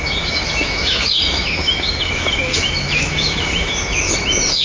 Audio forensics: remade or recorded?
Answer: remade